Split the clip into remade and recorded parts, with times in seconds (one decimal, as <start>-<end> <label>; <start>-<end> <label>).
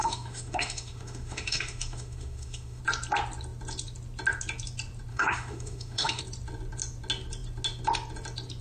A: 0.0-2.8 remade; 2.8-5.1 recorded; 5.1-6.2 remade; 6.2-8.6 recorded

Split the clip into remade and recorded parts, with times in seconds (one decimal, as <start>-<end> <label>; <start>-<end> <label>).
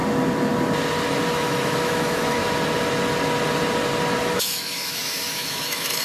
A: 0.0-1.3 recorded; 1.3-2.4 remade; 2.4-4.2 recorded; 4.2-6.0 remade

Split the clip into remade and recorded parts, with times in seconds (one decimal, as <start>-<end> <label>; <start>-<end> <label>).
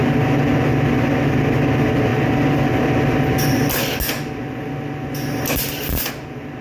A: 0.0-6.6 recorded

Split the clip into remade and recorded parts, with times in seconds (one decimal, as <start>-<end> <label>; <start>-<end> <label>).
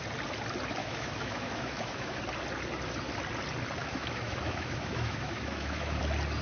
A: 0.0-0.8 recorded; 0.8-2.2 remade; 2.2-3.8 recorded; 3.8-6.0 remade; 6.0-6.4 recorded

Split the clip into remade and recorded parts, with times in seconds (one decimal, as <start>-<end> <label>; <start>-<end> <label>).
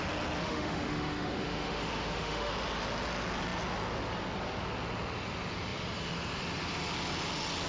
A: 0.0-0.4 recorded; 0.4-2.5 remade; 2.5-7.7 recorded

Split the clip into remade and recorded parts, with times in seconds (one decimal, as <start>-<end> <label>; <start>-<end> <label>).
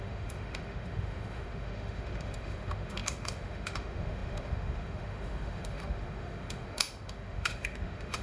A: 0.0-8.2 remade